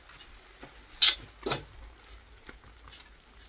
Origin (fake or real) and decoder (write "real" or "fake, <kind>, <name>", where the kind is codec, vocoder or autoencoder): real